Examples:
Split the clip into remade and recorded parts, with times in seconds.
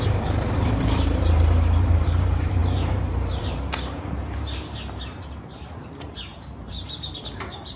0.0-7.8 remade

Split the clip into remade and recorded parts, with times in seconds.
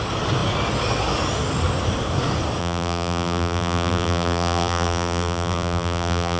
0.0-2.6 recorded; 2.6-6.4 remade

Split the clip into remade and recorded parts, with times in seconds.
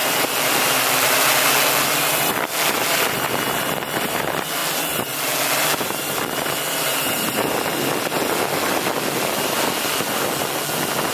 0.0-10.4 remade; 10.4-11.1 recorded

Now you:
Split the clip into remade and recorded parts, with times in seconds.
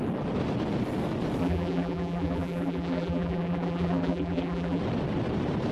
0.0-1.4 recorded; 1.4-4.8 remade; 4.8-5.7 recorded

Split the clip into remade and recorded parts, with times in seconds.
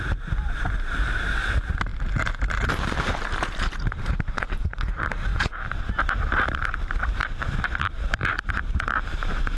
0.0-9.6 remade